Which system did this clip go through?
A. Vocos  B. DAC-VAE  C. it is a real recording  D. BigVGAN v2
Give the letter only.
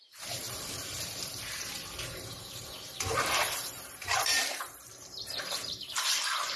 D